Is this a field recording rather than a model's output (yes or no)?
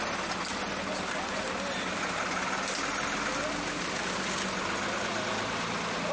yes